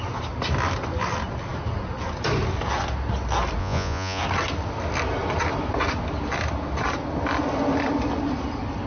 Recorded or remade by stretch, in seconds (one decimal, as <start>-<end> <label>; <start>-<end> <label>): 0.0-3.6 recorded; 3.6-4.2 remade; 4.2-8.9 recorded